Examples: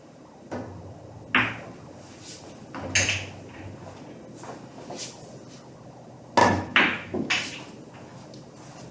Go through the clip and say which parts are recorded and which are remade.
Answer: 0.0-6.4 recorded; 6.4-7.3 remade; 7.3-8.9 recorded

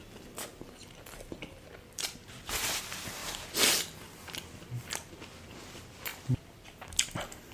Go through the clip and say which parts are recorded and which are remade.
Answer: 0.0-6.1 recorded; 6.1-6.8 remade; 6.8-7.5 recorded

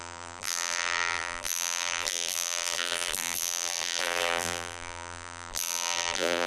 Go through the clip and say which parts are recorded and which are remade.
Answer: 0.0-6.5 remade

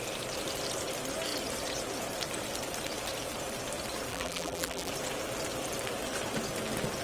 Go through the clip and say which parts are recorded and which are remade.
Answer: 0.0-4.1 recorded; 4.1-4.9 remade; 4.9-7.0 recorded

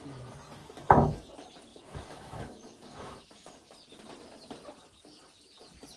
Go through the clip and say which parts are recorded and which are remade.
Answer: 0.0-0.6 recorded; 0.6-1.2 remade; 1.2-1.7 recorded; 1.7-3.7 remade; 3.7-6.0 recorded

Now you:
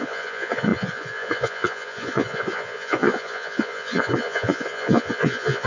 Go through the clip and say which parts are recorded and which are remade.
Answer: 0.0-5.7 remade